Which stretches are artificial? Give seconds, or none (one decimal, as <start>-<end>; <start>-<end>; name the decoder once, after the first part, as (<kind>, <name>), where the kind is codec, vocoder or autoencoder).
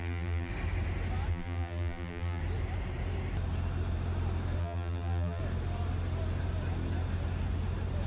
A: 0.0-0.5 (vocoder, BigVGAN v2); 1.3-2.4; 4.6-5.4